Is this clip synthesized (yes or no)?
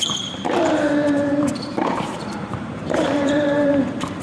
yes